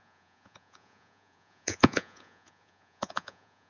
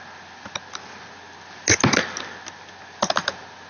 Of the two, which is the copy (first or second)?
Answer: first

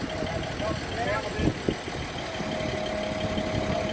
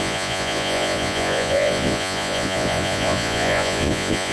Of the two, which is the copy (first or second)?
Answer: second